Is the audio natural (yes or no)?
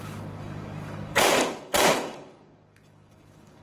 no